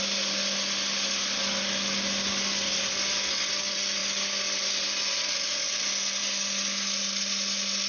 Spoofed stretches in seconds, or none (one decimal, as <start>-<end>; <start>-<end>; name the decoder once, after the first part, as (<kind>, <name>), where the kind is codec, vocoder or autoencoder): none

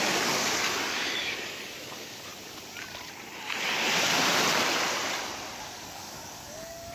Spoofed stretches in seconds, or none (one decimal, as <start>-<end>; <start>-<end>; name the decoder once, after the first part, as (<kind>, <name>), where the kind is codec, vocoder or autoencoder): 0.0-2.3 (codec, DAC); 5.6-6.9

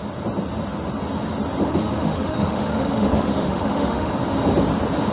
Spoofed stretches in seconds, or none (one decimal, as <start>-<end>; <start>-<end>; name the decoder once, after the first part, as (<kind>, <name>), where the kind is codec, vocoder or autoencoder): 1.7-4.1 (autoencoder, DAC-VAE)

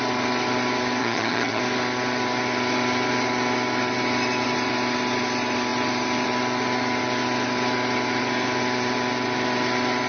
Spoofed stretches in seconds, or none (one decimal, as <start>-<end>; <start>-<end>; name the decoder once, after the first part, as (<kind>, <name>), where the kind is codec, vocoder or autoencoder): 1.0-1.6 (vocoder, HiFi-GAN)